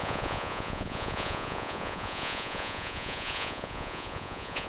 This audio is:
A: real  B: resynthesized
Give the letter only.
B